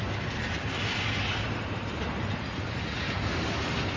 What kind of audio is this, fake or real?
real